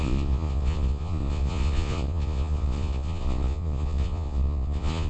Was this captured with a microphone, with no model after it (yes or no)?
no